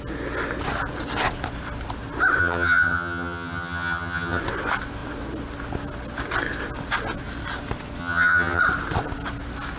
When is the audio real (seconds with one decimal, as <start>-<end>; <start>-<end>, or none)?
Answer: 0.0-2.4; 4.4-8.0; 8.6-9.8